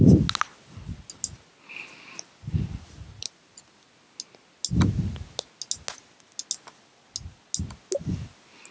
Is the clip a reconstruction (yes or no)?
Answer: no